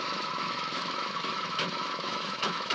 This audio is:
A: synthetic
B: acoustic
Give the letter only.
A